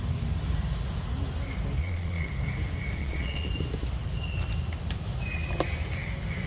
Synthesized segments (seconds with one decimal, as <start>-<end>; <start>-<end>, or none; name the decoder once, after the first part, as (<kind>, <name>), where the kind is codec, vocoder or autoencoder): 1.8-2.3 (vocoder, Vocos); 3.0-3.5